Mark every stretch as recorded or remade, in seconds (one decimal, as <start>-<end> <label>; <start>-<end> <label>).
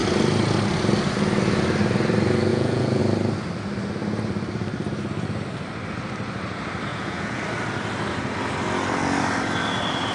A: 0.0-2.5 recorded; 2.5-3.0 remade; 3.0-6.9 recorded; 6.9-7.4 remade; 7.4-10.1 recorded